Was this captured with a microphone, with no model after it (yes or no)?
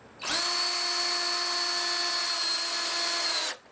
yes